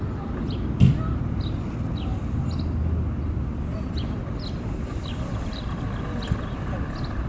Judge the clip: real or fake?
real